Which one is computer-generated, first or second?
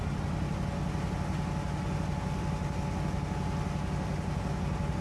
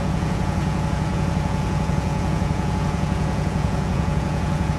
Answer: second